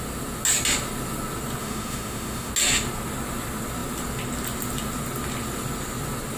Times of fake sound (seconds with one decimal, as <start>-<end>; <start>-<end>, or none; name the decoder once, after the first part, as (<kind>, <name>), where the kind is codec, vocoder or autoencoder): 1.6-2.5 (autoencoder, DAC-VAE)